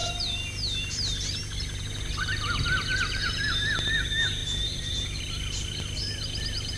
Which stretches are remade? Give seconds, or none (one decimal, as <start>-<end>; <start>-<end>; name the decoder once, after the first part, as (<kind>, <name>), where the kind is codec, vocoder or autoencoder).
2.9-3.5 (vocoder, BigVGAN v2); 4.4-5.2